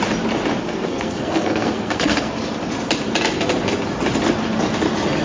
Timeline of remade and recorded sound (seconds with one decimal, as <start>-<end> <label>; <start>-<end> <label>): 0.0-0.6 recorded; 0.6-2.3 remade; 2.3-5.2 recorded